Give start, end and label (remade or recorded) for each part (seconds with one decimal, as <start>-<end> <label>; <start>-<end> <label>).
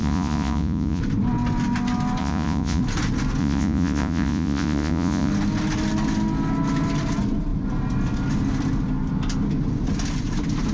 0.0-1.0 remade; 1.0-2.2 recorded; 2.2-2.8 remade; 2.8-3.4 recorded; 3.4-5.3 remade; 5.3-10.7 recorded